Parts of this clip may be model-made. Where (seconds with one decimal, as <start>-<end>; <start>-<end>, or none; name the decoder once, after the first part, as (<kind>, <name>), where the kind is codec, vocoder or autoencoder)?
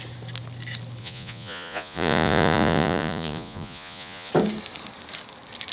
1.0-4.3 (vocoder, Vocos)